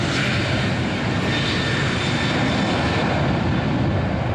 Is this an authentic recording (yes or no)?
yes